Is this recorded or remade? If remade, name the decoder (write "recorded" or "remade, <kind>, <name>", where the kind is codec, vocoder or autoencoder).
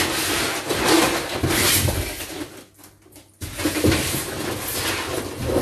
recorded